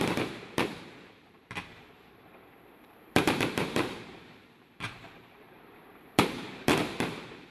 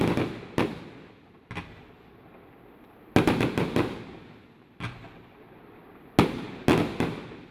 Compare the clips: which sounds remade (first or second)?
first